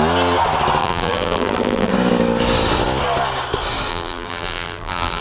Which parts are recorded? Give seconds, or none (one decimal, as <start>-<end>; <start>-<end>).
0.0-0.8; 1.9-3.9